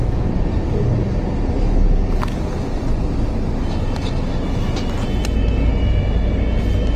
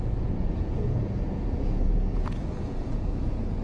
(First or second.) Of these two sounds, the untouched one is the first